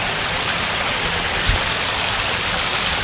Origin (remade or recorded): recorded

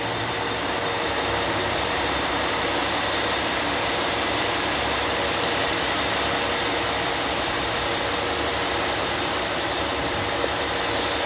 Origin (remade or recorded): recorded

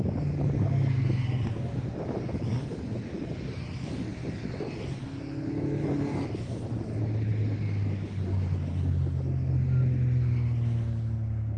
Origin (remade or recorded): recorded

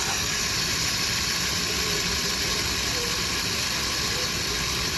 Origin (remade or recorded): recorded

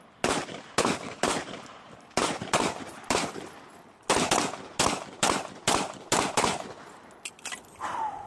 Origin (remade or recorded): recorded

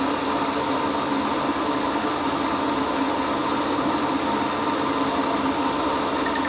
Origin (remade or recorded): recorded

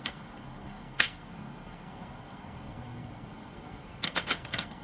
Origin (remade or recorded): remade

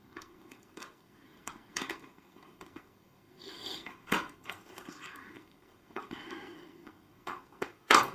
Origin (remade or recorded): remade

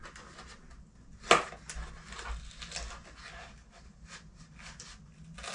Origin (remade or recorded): recorded